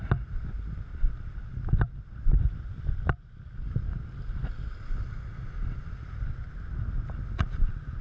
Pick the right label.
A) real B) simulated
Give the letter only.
A